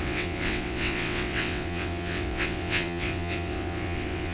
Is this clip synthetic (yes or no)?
yes